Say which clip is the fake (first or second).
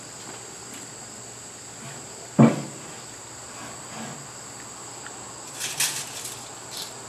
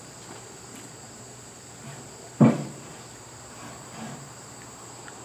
second